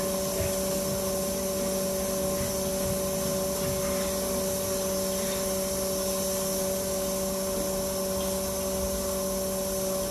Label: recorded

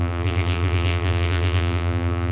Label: remade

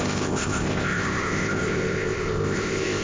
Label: remade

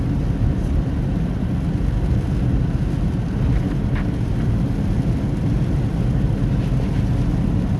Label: recorded